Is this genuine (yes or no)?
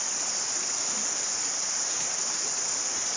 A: yes